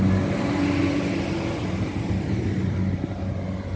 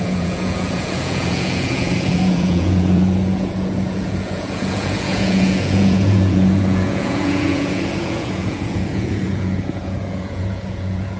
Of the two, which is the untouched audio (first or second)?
first